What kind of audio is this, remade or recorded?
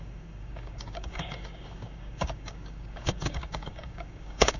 remade